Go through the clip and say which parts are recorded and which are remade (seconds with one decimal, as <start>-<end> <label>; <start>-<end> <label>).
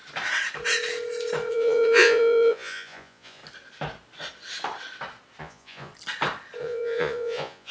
0.0-1.5 recorded; 1.5-3.4 remade; 3.4-5.4 recorded; 5.4-5.9 remade; 5.9-6.6 recorded; 6.6-7.7 remade